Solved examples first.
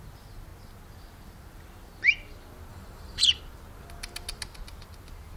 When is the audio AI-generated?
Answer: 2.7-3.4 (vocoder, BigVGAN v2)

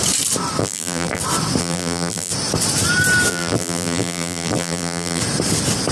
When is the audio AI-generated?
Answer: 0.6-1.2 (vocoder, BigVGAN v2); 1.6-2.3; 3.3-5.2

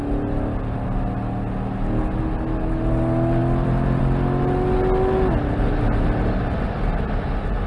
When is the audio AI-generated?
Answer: 3.4-4.0 (vocoder, BigVGAN v2)

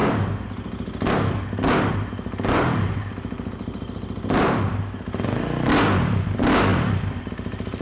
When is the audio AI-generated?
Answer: 6.7-7.3 (vocoder, BigVGAN v2)

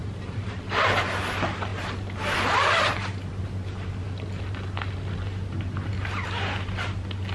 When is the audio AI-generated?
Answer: 0.0-0.5 (vocoder, BigVGAN v2); 1.7-3.3

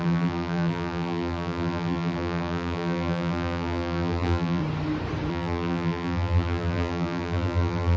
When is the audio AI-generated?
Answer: 0.0-4.6 (vocoder, BigVGAN v2); 5.3-8.0

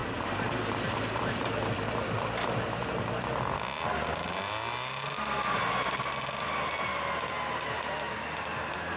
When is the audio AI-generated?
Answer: 0.0-1.6 (vocoder, BigVGAN v2)